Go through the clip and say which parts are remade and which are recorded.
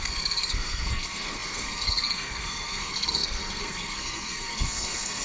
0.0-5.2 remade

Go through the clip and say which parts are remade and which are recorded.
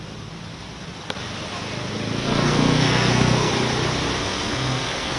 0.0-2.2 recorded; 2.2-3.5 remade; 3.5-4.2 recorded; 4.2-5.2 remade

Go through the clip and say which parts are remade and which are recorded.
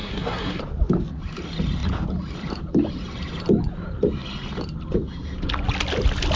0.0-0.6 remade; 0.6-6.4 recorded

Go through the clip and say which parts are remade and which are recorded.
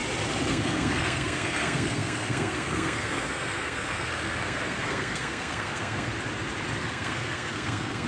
0.0-0.5 recorded; 0.5-6.1 remade; 6.1-6.8 recorded; 6.8-8.1 remade